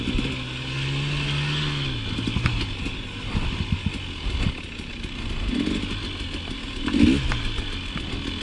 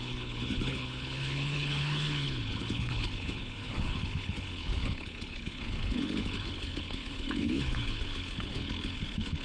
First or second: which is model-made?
second